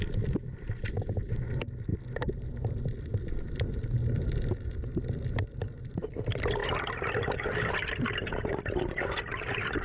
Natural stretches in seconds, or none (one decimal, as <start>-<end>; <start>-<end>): 1.9-2.7